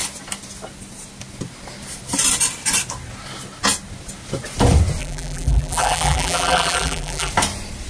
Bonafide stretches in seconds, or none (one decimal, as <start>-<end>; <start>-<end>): 0.0-5.0; 7.3-7.9